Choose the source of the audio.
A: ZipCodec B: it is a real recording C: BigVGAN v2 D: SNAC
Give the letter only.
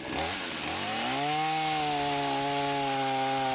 B